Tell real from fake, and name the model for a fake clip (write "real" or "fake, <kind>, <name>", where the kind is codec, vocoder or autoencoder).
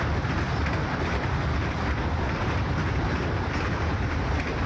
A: fake, vocoder, BigVGAN v2